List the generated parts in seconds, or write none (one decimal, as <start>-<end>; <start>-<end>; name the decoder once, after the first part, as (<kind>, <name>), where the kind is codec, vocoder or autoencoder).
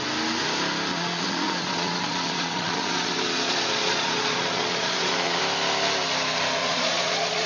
0.9-5.4 (vocoder, Vocos); 6.6-7.5